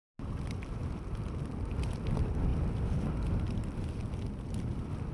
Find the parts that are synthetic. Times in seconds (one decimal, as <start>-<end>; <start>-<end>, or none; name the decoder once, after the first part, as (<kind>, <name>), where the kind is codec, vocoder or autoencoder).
none

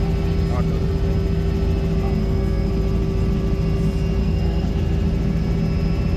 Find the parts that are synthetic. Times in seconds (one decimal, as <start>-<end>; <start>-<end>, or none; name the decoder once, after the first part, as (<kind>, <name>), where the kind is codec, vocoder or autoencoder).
2.2-2.7 (codec, SNAC); 4.2-4.7

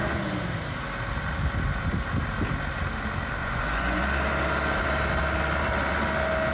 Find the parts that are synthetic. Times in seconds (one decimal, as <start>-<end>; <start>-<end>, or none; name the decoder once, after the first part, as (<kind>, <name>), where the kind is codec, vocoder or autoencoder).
3.4-4.0 (vocoder, Vocos)

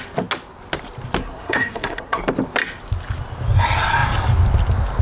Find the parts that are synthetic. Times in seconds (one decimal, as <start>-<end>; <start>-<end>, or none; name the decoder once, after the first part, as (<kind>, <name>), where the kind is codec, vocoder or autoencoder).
1.2-2.2 (codec, SNAC)

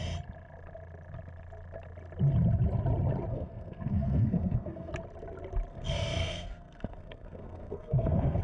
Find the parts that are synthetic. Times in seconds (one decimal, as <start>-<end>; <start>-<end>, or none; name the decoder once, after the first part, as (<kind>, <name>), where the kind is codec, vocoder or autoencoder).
3.3-4.9 (codec, SNAC); 5.7-8.4

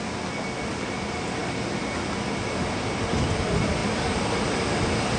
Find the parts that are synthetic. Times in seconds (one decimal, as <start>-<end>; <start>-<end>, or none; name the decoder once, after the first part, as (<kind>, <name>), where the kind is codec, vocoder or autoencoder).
none

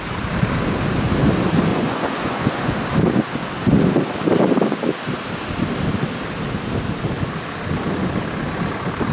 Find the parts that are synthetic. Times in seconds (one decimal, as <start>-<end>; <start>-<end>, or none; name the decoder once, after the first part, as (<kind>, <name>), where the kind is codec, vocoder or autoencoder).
1.7-2.7 (vocoder, Vocos)